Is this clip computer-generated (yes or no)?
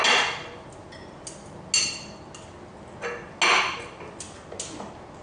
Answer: no